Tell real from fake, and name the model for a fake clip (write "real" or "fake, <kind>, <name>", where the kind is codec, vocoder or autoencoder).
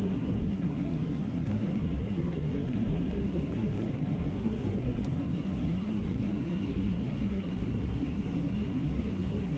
fake, codec, SNAC